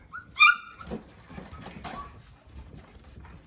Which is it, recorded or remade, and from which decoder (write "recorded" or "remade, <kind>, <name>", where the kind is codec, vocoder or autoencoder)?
recorded